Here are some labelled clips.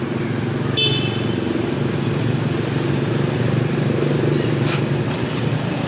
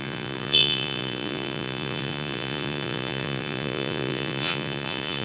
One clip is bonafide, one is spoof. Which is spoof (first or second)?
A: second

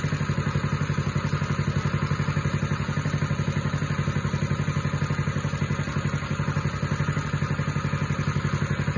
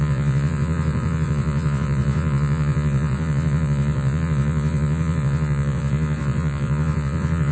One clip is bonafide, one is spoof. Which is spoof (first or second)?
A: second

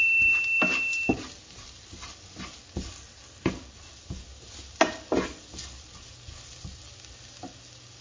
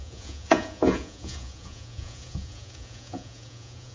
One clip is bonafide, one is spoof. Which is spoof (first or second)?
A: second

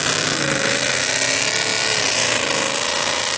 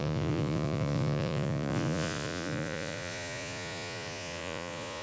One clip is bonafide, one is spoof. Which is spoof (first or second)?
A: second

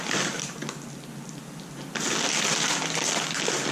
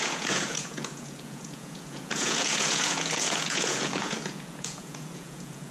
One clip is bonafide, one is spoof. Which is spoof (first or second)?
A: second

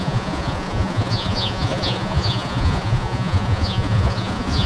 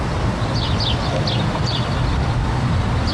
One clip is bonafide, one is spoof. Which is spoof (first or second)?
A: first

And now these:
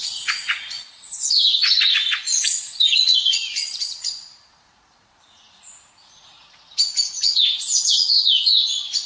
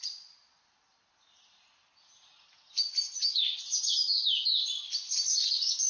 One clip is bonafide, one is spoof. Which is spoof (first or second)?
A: first